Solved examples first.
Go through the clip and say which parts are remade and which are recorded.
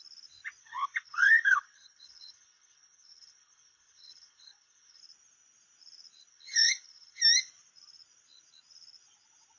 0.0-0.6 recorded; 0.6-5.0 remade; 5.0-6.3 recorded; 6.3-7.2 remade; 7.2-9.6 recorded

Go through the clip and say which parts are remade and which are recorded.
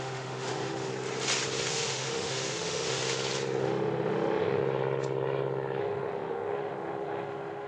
0.0-0.9 remade; 0.9-1.6 recorded; 1.6-3.0 remade; 3.0-3.6 recorded; 3.6-4.6 remade; 4.6-5.8 recorded; 5.8-7.7 remade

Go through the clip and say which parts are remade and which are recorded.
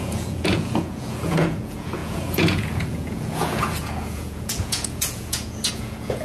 0.0-6.2 remade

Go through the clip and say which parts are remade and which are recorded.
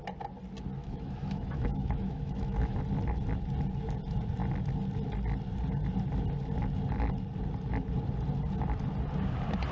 0.0-0.8 recorded; 0.8-2.8 remade; 2.8-9.7 recorded